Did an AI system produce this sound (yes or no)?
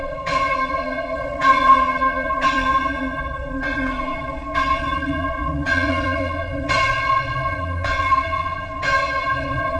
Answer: yes